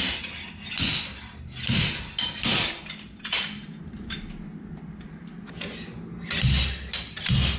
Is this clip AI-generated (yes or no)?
no